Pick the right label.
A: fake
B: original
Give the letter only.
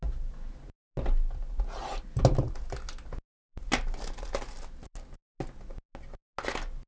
B